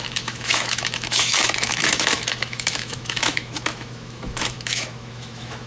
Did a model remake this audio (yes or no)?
yes